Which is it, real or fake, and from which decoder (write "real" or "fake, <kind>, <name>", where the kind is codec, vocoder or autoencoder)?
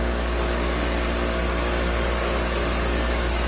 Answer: fake, codec, DAC